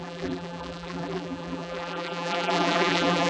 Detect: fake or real fake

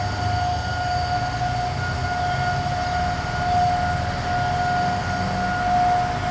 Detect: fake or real real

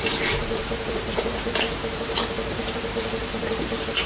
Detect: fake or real fake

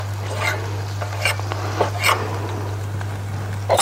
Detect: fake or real real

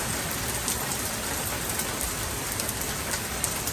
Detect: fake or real real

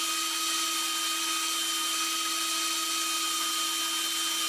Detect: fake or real real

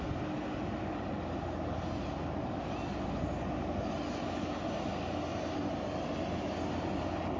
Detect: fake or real real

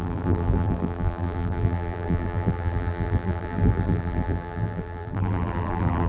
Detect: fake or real fake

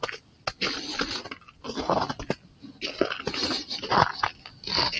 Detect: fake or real real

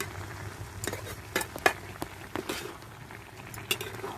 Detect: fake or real real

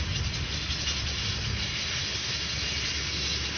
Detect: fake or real real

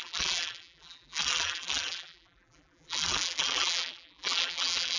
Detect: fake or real fake